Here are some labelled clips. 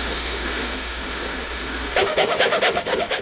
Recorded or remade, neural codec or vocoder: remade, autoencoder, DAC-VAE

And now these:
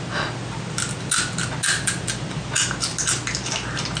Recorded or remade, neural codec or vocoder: recorded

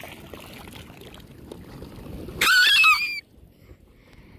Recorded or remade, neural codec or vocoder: recorded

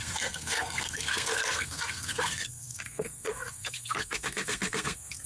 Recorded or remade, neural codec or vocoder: remade, codec, SNAC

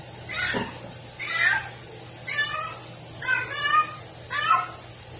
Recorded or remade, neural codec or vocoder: recorded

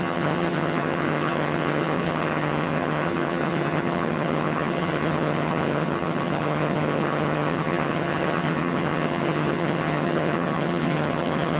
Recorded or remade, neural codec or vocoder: remade, vocoder, HiFi-GAN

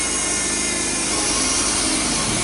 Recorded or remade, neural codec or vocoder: recorded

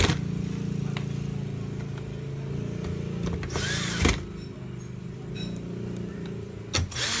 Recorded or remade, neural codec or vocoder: recorded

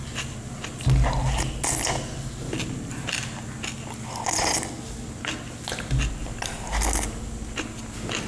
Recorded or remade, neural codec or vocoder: recorded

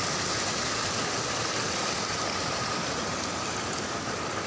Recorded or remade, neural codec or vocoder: recorded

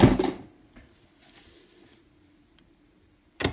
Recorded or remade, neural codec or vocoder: recorded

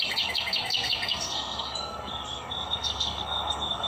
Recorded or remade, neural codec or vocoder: remade, codec, SNAC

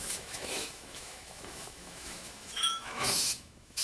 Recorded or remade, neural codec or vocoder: remade, autoencoder, DAC-VAE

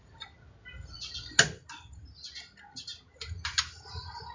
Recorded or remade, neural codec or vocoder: recorded